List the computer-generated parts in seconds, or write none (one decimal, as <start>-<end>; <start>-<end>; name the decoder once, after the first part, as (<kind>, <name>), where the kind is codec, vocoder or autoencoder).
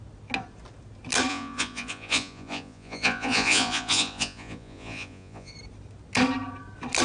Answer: 1.3-5.5 (vocoder, Vocos)